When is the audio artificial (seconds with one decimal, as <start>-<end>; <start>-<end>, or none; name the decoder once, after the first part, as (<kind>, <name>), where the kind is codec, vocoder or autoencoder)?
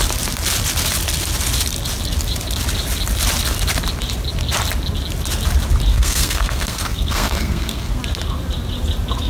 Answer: 5.9-8.0 (codec, SNAC)